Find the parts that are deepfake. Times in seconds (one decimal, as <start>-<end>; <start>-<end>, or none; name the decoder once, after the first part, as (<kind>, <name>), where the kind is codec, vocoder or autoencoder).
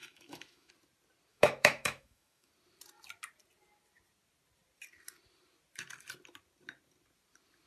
0.0-0.7 (autoencoder, DAC-VAE); 1.3-2.5